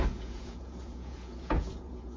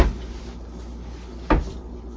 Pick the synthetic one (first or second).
first